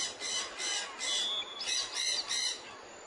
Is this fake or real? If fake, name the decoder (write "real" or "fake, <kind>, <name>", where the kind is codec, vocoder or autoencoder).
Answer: real